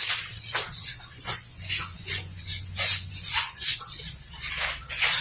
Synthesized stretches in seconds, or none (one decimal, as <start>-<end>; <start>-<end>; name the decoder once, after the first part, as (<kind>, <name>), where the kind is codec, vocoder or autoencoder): 0.8-3.8 (vocoder, Vocos)